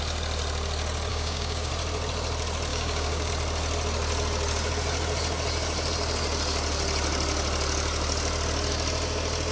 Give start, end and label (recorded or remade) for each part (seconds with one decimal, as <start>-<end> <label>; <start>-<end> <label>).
0.0-1.1 recorded; 1.1-1.7 remade; 1.7-2.7 recorded; 2.7-3.3 remade; 3.3-9.5 recorded